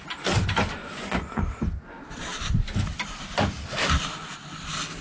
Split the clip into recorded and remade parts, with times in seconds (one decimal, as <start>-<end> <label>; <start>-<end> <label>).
0.0-0.8 recorded; 0.8-1.5 remade; 1.5-5.0 recorded